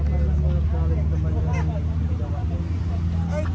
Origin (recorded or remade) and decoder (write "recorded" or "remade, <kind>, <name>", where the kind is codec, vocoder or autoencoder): recorded